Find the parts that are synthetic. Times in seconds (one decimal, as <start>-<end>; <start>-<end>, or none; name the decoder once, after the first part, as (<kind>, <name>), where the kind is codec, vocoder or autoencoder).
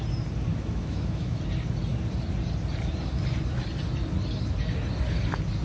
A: 0.5-1.4 (autoencoder, DAC-VAE)